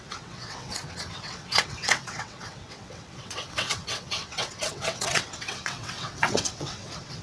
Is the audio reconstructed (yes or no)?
yes